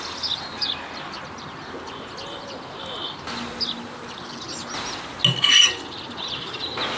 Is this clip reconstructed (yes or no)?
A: no